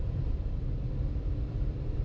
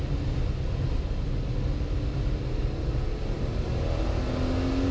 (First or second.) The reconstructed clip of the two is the first